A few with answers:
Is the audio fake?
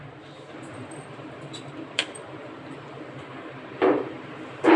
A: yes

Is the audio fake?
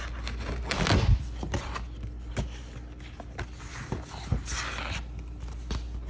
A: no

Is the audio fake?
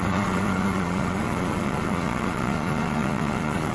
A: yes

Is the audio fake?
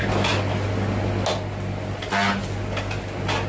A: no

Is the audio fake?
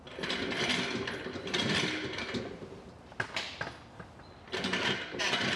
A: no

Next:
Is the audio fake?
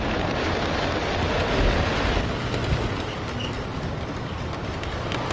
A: no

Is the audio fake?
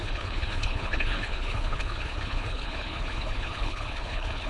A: yes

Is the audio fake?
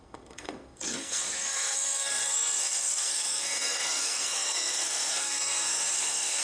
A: yes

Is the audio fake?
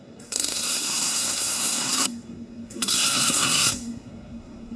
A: yes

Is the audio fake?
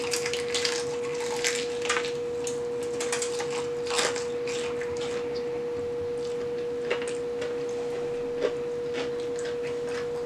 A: no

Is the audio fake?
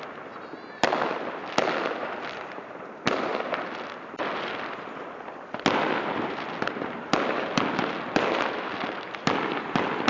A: no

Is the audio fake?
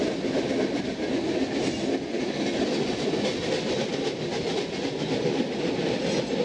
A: no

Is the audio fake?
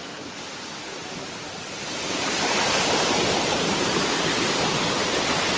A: no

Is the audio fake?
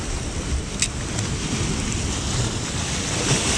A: no